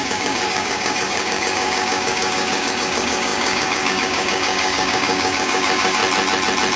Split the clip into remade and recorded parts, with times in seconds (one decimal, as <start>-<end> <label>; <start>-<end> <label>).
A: 0.0-6.0 remade; 6.0-6.8 recorded